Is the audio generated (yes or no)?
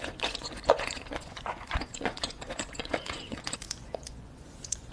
yes